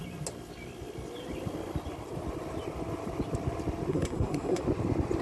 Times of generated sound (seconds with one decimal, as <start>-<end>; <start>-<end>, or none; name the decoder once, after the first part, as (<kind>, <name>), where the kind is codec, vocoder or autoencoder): 3.9-4.6 (codec, SNAC)